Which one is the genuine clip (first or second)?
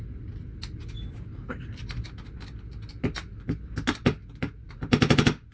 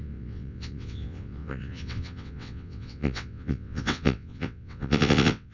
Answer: first